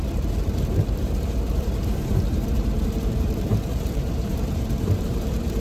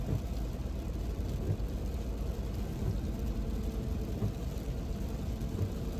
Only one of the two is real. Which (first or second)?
second